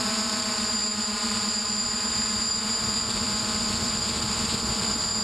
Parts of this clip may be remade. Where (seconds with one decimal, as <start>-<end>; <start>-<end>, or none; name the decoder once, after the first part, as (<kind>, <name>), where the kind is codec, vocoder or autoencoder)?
0.0-5.2 (vocoder, BigVGAN v2)